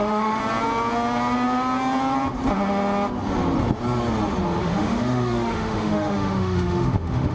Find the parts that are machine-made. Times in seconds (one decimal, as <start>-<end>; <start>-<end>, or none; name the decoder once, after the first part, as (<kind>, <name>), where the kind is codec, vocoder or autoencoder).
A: 0.0-0.4 (autoencoder, DAC-VAE); 4.6-7.3